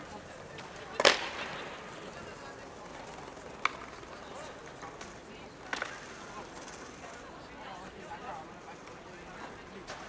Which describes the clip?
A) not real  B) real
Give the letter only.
B